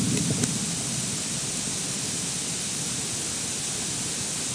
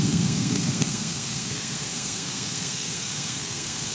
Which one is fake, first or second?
second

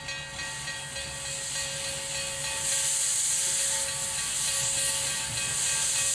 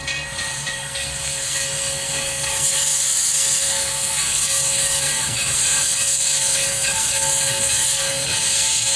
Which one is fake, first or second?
second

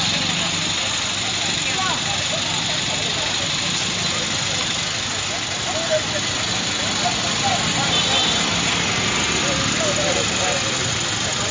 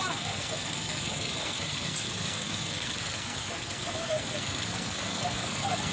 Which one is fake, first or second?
second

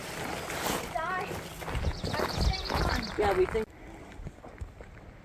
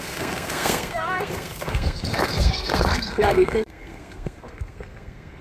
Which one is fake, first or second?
second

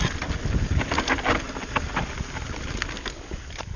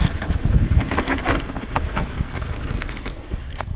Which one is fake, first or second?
second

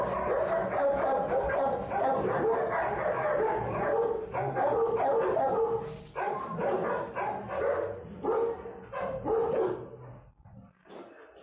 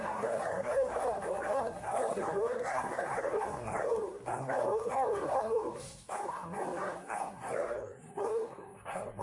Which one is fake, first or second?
second